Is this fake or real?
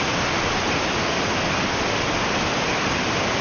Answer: real